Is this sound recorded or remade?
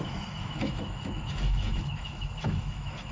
remade